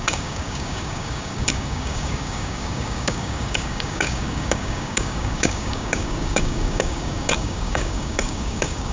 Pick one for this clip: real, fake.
fake